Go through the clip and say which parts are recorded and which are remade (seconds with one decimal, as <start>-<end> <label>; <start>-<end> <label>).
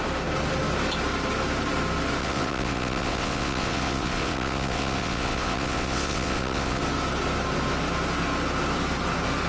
0.0-2.2 recorded; 2.2-6.8 remade; 6.8-9.5 recorded